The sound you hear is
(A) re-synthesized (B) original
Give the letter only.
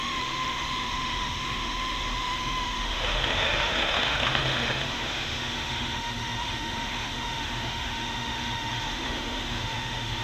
A